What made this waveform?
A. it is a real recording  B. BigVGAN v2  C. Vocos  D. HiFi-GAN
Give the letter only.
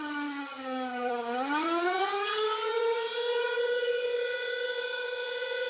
D